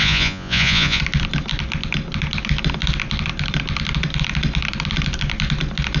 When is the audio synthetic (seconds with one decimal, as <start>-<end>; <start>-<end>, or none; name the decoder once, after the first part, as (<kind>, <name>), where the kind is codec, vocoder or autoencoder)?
0.0-1.0 (vocoder, Vocos)